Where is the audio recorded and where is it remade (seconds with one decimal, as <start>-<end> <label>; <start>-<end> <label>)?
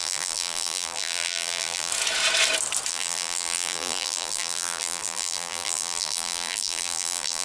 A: 0.0-1.9 remade; 1.9-2.9 recorded; 2.9-7.4 remade